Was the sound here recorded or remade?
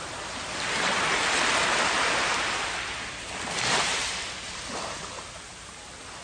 recorded